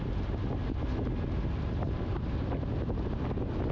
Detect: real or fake real